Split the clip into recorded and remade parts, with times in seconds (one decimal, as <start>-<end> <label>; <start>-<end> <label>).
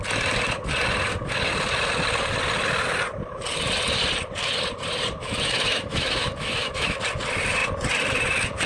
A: 0.0-5.2 recorded; 5.2-7.0 remade; 7.0-8.7 recorded